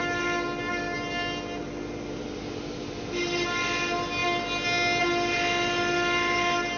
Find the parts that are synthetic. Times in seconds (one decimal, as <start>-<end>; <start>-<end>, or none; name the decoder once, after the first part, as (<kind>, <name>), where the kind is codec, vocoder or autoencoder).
none